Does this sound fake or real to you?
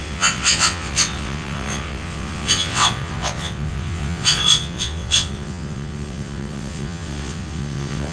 fake